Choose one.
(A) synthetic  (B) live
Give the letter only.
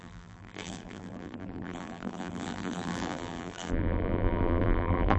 A